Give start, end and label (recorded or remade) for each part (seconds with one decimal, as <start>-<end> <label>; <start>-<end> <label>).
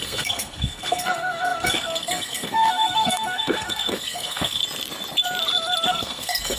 0.0-4.6 remade; 4.6-5.9 recorded; 5.9-6.6 remade